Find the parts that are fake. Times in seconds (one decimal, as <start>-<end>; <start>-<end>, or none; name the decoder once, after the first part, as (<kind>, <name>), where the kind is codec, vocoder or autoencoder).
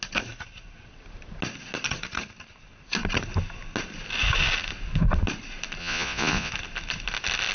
5.8-6.5 (vocoder, Vocos)